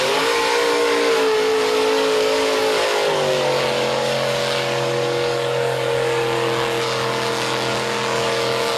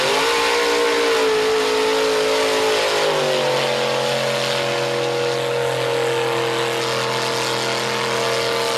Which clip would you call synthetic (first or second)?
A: first